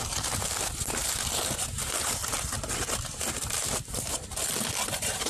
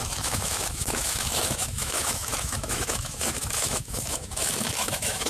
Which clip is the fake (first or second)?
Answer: second